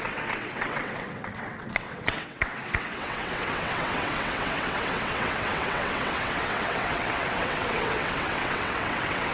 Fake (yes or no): yes